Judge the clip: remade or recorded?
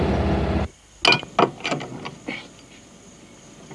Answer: recorded